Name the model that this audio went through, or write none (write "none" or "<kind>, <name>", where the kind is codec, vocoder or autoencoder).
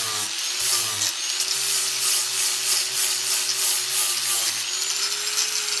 none